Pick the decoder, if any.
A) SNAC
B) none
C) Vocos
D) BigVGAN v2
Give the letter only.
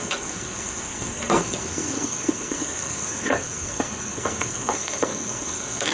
A